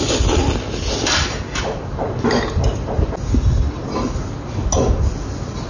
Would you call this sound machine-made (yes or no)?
no